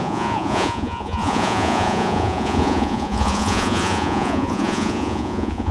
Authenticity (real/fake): fake